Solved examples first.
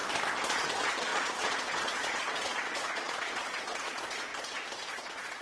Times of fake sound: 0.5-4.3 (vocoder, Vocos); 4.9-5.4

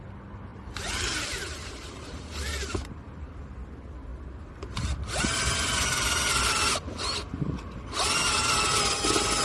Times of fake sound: 0.5-3.4 (vocoder, BigVGAN v2)

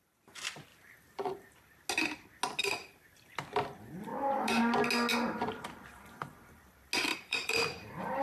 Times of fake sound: 0.7-1.5 (vocoder, BigVGAN v2); 4.1-4.6; 5.1-6.3; 7.1-8.2